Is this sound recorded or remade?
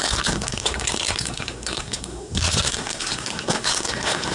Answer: remade